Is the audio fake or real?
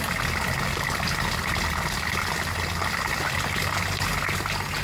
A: real